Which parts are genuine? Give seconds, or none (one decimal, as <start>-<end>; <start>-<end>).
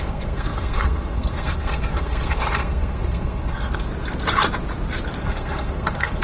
3.9-5.2